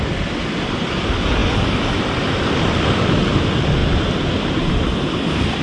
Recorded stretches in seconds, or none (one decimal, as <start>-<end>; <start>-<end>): 0.0-5.6